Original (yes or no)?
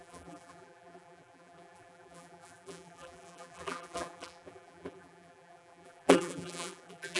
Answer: no